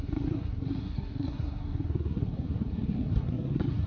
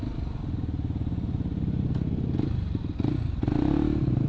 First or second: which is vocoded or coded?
first